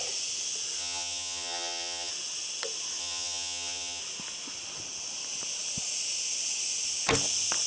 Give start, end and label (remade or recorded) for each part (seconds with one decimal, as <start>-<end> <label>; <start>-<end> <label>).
0.0-0.8 recorded; 0.8-2.1 remade; 2.1-3.0 recorded; 3.0-4.0 remade; 4.0-7.7 recorded